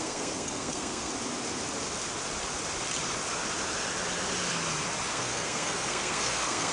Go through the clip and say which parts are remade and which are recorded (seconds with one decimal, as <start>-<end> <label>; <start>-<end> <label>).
0.0-1.1 remade; 1.1-5.1 recorded; 5.1-6.7 remade